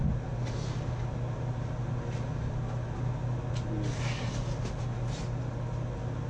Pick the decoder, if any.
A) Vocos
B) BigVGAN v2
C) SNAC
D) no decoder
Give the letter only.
D